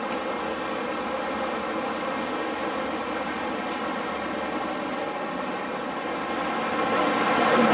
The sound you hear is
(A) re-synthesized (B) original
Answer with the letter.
B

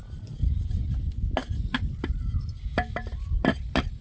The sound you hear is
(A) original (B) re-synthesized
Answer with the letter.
A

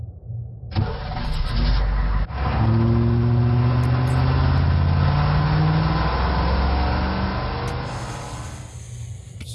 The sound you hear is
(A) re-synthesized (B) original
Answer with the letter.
B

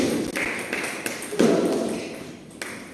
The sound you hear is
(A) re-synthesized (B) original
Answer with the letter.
B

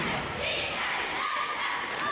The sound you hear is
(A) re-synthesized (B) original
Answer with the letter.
B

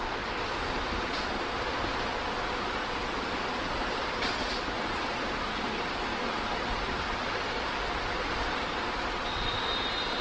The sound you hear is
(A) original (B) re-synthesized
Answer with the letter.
A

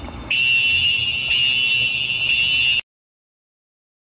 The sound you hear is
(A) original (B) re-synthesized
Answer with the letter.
A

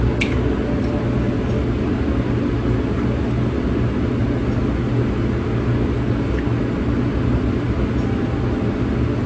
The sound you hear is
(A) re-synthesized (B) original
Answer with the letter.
B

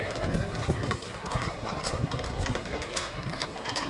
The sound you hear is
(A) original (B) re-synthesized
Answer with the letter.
B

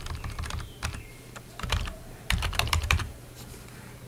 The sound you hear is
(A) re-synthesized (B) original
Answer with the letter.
A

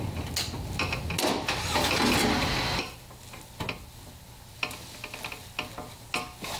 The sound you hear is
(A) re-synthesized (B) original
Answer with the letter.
B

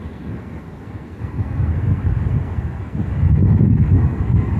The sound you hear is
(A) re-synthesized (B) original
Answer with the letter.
A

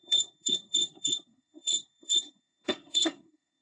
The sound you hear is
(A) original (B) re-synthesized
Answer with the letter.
B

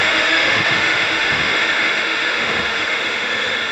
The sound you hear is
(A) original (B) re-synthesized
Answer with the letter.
B